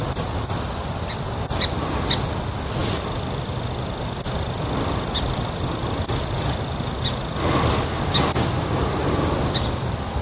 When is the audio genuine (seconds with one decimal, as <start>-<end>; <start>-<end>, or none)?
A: 0.0-10.2